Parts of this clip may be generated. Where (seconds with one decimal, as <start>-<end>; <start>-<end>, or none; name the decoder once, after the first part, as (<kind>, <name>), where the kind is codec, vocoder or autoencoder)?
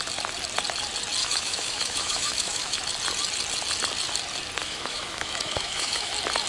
1.2-2.8 (autoencoder, DAC-VAE); 4.6-6.1